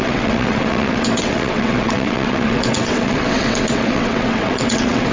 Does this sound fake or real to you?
fake